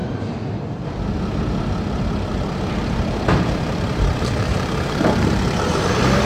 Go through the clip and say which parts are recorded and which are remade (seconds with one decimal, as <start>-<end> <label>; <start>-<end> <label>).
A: 0.0-0.6 remade; 0.6-2.3 recorded; 2.3-5.8 remade; 5.8-6.2 recorded